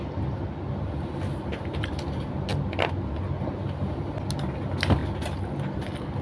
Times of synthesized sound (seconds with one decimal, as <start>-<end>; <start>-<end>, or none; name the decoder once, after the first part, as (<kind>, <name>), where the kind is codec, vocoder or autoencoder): none